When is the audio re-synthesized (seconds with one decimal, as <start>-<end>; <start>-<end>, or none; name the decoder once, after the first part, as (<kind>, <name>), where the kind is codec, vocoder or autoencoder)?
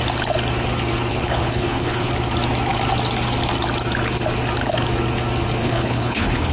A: 1.1-2.1 (codec, HILCodec); 5.6-6.5